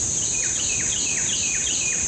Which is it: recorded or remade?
recorded